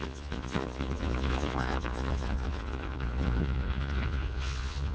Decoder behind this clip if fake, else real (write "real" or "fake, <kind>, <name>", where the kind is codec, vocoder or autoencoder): fake, vocoder, Vocos